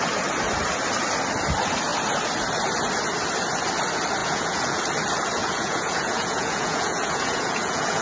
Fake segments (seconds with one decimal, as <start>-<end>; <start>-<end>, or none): 4.2-4.8; 5.4-8.0